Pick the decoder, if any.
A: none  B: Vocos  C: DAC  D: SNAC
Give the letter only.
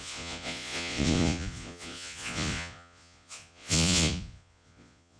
B